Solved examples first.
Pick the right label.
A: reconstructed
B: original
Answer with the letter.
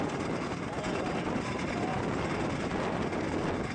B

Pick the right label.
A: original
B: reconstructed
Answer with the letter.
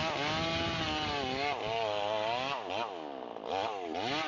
A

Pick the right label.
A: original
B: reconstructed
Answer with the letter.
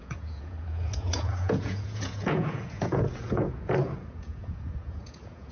B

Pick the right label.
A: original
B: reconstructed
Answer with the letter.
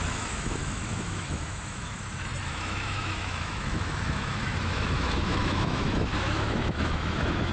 B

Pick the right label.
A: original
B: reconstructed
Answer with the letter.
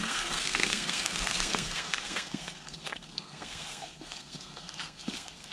B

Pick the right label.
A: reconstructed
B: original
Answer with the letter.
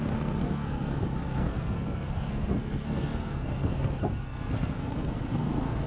A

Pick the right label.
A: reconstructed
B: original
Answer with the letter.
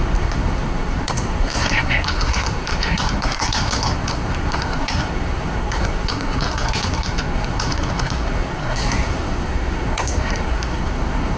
A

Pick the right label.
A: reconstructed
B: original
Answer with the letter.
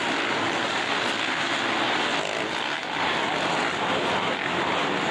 B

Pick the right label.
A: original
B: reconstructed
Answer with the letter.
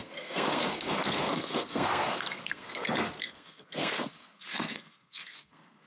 B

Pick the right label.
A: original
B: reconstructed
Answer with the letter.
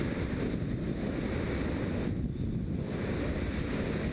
A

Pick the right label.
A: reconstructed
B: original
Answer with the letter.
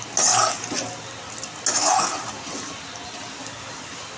B